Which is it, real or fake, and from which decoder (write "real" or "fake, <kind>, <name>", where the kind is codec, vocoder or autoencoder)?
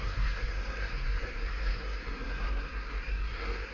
fake, codec, SNAC